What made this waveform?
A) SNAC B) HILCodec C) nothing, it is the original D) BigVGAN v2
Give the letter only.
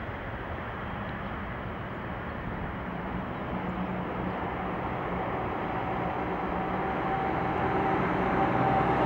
C